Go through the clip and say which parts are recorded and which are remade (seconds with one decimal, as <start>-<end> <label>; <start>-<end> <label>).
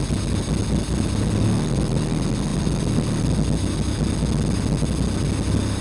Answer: 0.0-5.8 recorded